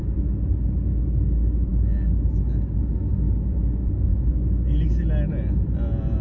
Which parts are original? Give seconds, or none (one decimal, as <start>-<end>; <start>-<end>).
0.0-6.2